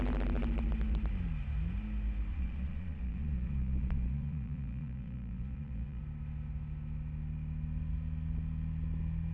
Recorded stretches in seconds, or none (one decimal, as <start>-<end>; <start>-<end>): 0.0-2.3; 6.0-9.3